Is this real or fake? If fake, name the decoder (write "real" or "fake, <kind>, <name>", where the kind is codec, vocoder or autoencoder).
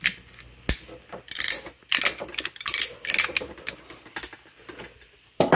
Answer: real